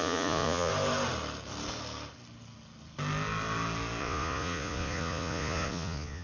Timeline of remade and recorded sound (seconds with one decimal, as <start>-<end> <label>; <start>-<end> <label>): 0.0-0.7 remade; 0.7-4.0 recorded; 4.0-6.2 remade